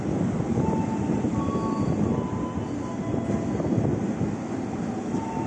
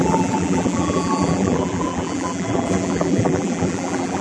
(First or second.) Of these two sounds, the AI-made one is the second